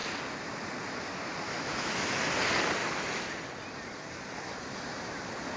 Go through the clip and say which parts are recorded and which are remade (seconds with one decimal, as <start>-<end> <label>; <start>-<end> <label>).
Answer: 0.0-1.5 recorded; 1.5-2.2 remade; 2.2-5.6 recorded